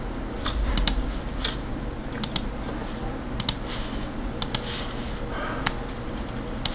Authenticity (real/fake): real